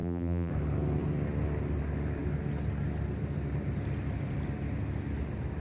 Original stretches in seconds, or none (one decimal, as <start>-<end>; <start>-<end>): 0.5-5.6